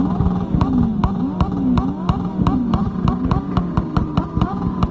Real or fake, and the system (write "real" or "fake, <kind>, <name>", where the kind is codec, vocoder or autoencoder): real